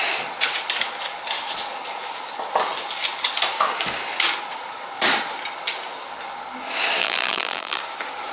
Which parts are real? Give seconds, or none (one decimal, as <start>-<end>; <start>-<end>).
0.0-7.0; 7.8-8.3